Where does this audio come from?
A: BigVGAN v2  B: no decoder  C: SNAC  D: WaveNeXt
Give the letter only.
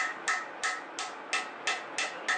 B